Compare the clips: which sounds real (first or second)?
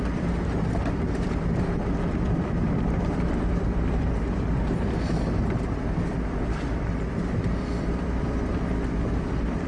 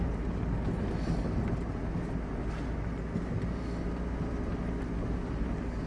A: second